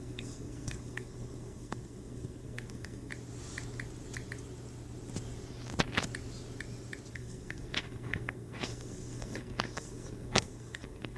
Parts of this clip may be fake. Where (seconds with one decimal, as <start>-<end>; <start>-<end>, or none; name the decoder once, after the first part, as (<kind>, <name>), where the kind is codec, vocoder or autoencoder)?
0.0-3.1 (codec, SNAC); 7.1-11.2